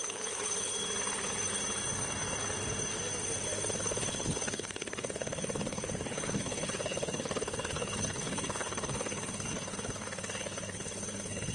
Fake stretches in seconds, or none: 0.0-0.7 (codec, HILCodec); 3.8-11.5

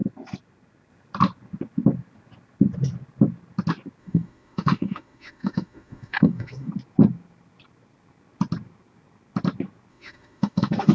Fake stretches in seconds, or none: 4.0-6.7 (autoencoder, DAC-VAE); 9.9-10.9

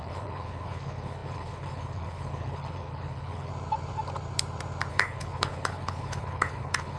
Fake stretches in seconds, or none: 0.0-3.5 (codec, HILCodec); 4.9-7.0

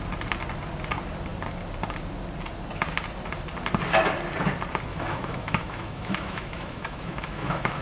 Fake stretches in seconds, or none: 4.9-7.8 (autoencoder, DAC-VAE)